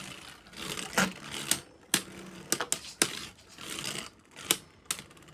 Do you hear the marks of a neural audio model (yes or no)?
no